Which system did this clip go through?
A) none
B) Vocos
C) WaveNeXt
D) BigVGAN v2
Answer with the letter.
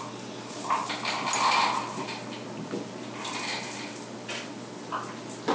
A